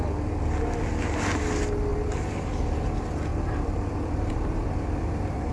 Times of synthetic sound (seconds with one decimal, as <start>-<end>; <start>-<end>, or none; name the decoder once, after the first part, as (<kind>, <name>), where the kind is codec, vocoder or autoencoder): 3.3-5.5 (vocoder, BigVGAN v2)